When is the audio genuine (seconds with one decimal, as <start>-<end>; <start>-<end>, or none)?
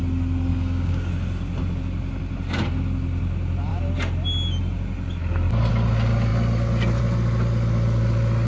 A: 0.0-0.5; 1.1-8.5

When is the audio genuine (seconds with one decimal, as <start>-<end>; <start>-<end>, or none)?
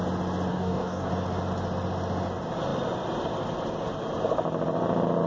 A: 0.0-0.5; 1.1-5.3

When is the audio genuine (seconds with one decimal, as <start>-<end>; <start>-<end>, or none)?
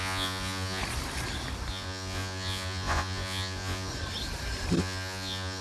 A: 0.8-1.7; 3.9-4.8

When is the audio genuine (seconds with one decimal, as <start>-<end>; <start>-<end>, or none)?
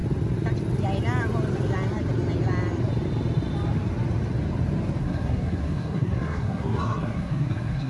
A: 0.0-5.0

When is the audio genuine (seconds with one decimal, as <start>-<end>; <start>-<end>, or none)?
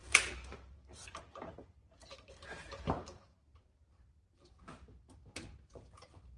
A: 1.2-2.0; 4.6-5.7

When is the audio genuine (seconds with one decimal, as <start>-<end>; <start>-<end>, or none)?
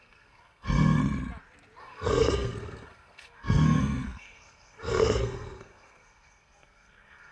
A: 1.0-1.8